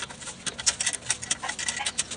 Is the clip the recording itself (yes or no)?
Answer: yes